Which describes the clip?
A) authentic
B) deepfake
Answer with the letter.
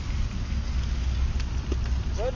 A